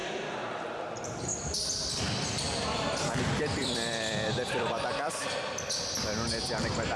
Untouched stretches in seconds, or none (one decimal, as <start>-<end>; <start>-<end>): 0.8-3.6; 5.2-7.0